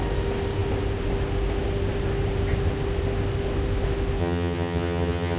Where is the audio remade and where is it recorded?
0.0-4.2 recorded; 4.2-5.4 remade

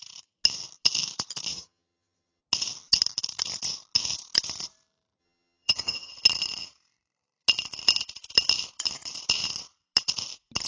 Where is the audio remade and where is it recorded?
0.0-1.5 recorded; 1.5-2.4 remade; 2.4-5.2 recorded; 5.2-6.1 remade; 6.1-10.7 recorded